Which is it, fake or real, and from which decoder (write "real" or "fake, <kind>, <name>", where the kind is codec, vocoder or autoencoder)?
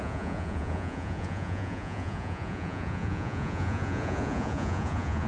fake, vocoder, Vocos